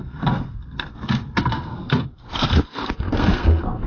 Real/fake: fake